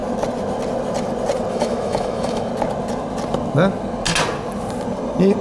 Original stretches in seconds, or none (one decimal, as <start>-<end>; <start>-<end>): 0.0-1.5; 2.5-5.4